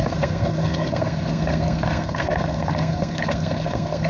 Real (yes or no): no